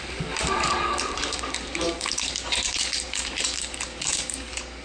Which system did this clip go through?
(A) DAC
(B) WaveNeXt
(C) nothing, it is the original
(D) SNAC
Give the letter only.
A